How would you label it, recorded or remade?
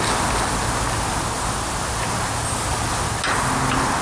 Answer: recorded